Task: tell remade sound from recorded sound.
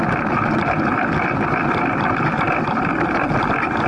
recorded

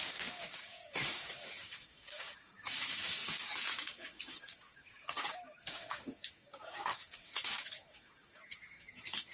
remade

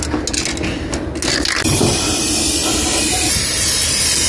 recorded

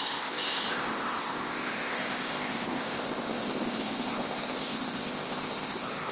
remade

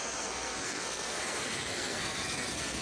remade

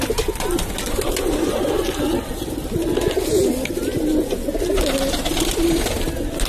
recorded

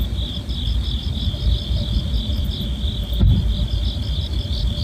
recorded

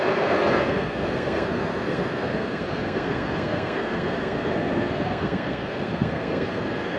remade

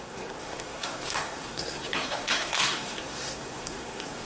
remade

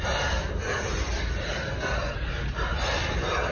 recorded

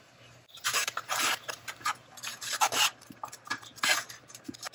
remade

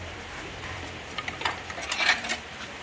remade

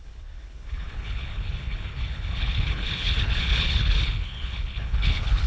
remade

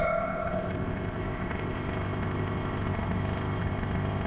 remade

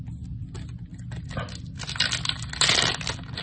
recorded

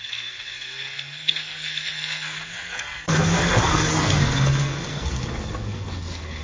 remade